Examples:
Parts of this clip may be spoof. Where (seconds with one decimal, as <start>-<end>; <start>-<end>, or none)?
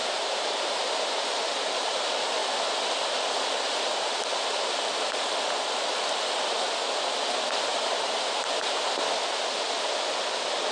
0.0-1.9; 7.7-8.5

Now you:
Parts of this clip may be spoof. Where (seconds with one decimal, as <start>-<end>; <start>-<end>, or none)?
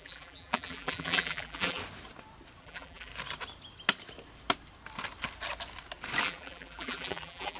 0.0-1.8; 2.6-3.1; 6.2-7.6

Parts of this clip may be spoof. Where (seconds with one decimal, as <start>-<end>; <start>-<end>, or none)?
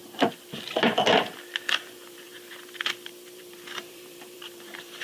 1.7-5.0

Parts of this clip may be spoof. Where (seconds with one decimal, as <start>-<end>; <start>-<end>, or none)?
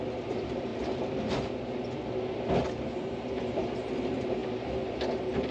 0.0-0.7; 2.8-4.4; 5.1-5.5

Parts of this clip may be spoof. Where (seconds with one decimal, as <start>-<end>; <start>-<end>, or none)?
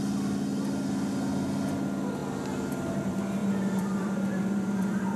3.4-5.2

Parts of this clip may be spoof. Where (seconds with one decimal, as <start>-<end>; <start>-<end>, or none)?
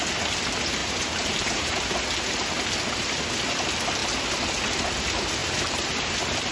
0.8-1.9; 5.4-6.0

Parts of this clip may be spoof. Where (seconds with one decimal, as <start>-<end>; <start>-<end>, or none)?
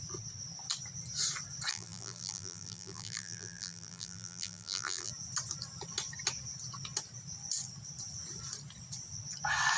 1.7-5.1